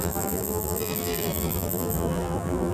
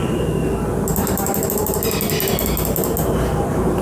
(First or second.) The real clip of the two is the second